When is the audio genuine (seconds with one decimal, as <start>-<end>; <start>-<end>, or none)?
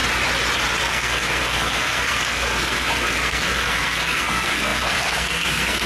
0.0-0.8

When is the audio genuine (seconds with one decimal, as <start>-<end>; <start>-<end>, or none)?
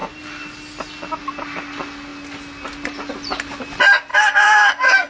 0.0-4.1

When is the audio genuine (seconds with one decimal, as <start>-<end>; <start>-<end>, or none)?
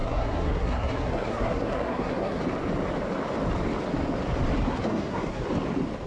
2.4-4.7; 5.4-6.1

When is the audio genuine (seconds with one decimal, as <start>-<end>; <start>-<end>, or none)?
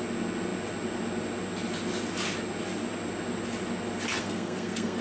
0.0-4.2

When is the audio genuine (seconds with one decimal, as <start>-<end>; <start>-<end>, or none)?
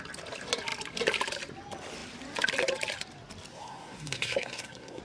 0.0-3.5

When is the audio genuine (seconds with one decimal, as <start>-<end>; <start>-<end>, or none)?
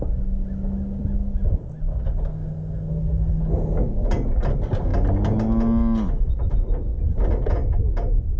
0.0-2.3; 3.4-8.4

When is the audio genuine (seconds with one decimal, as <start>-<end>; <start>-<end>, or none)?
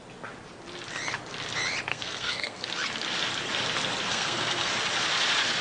0.0-1.9; 2.7-4.1; 4.7-5.6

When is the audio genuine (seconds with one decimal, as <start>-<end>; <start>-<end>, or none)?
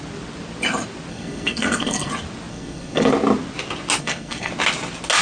0.0-1.1; 2.1-2.5; 3.1-4.0; 4.5-5.2